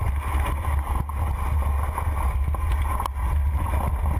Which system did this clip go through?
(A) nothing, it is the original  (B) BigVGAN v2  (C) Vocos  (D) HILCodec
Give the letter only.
A